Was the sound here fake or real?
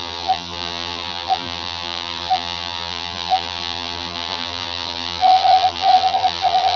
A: fake